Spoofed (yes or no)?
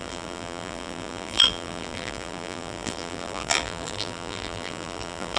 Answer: yes